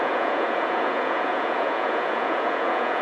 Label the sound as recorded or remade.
remade